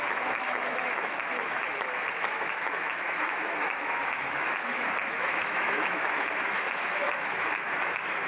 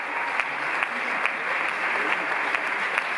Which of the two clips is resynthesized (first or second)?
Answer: first